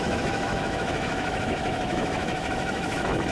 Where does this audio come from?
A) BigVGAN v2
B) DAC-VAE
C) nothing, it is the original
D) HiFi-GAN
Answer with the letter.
B